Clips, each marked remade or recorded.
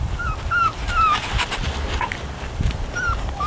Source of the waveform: recorded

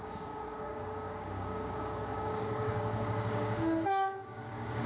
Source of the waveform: remade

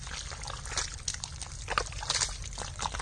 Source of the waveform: recorded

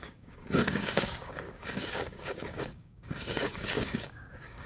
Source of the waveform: remade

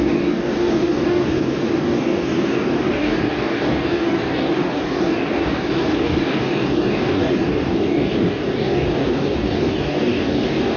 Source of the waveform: remade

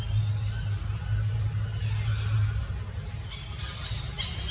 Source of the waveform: recorded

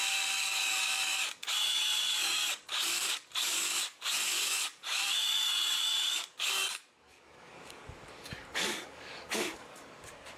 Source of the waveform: remade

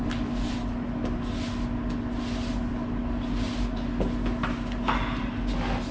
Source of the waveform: recorded